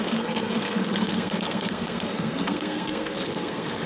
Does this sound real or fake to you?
fake